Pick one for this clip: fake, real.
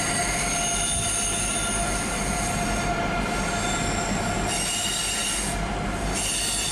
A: real